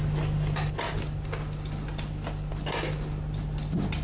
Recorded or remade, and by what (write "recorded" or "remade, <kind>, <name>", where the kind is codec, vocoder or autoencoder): recorded